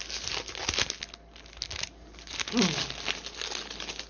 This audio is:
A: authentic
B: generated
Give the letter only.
A